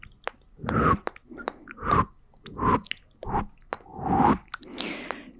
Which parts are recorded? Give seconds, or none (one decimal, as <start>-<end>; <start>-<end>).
0.0-5.4

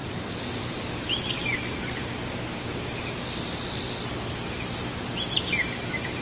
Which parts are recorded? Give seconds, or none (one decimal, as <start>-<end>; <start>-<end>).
0.0-6.2

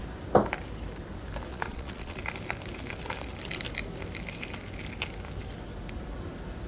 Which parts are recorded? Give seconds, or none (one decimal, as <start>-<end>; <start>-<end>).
0.0-1.5; 2.2-6.7

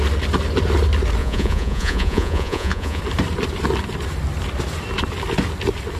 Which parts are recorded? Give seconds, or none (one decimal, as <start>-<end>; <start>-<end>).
0.0-1.2; 3.0-6.0

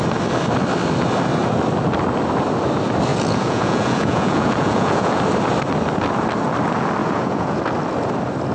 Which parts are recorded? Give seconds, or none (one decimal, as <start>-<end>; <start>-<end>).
0.0-3.1; 5.2-7.0; 7.6-8.5

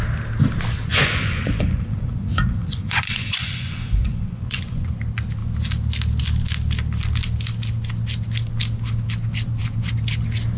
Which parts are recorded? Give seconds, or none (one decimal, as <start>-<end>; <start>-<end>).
0.0-0.9; 4.9-10.6

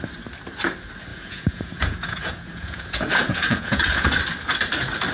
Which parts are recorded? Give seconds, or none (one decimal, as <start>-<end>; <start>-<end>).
0.0-1.1; 4.2-5.1